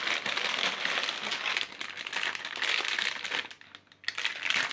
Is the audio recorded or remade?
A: recorded